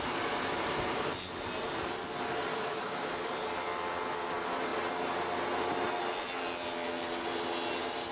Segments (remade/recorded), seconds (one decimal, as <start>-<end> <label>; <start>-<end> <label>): 0.0-2.5 recorded; 2.5-3.3 remade; 3.3-8.1 recorded